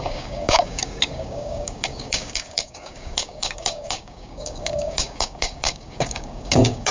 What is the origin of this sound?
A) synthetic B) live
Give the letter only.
A